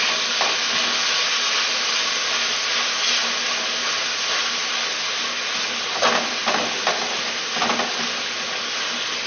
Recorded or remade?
recorded